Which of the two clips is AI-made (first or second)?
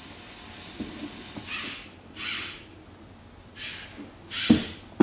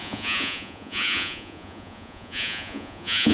second